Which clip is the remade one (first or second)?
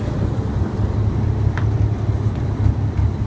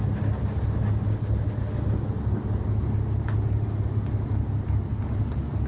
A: first